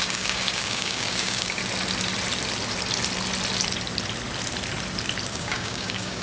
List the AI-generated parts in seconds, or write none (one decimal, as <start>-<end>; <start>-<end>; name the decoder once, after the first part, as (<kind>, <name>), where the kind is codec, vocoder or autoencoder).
0.0-1.6 (codec, DAC); 5.3-6.2